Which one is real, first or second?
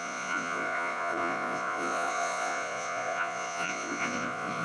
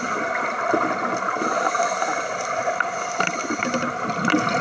second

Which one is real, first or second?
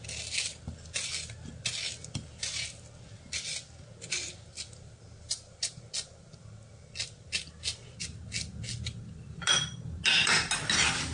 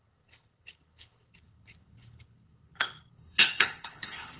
first